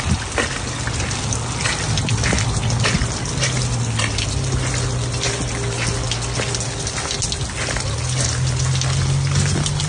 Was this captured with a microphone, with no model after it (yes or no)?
yes